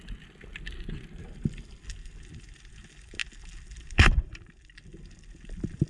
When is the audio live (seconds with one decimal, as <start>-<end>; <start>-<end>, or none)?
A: 0.0-0.5; 2.2-3.2; 4.7-5.9

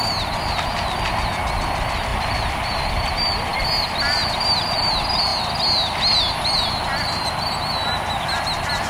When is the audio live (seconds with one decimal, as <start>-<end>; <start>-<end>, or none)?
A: 0.0-2.1; 2.9-8.9

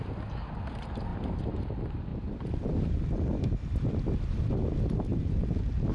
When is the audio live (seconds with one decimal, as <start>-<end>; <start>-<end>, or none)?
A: 0.0-1.1; 1.6-2.1; 4.5-5.1

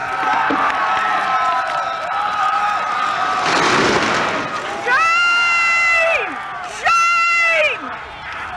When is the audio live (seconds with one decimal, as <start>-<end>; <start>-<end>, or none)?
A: 2.9-8.6

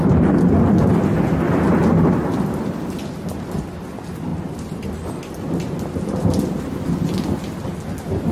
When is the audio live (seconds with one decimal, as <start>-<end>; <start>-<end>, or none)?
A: 0.0-4.3; 4.9-8.3

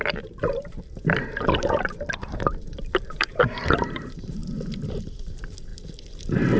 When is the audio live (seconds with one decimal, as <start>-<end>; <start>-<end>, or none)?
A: 1.0-1.6; 4.4-5.0; 5.7-6.6

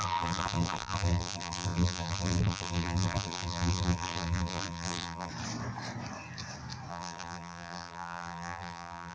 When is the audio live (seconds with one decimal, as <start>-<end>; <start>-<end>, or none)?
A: 5.3-6.9